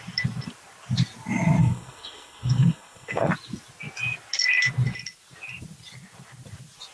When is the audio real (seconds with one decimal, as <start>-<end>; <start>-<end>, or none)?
0.0-1.6; 3.3-6.9